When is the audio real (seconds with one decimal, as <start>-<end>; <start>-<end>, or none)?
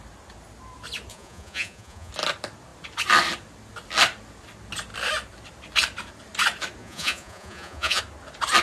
0.0-1.1; 2.1-6.8; 8.0-8.6